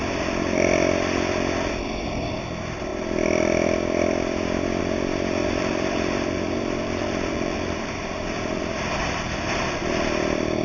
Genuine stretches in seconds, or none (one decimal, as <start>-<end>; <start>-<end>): 0.0-5.4; 9.7-10.6